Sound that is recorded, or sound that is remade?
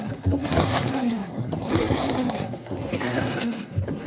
remade